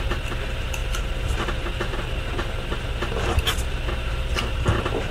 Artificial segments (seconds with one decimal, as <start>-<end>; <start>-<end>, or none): none